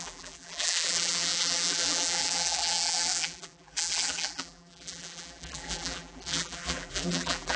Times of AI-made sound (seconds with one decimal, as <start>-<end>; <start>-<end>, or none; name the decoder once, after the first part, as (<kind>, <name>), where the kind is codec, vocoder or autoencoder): 0.0-7.6 (vocoder, BigVGAN v2)